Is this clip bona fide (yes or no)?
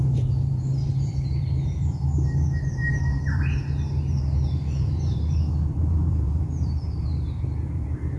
no